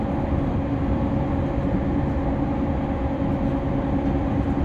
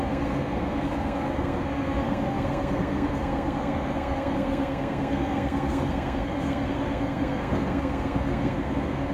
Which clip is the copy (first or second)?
second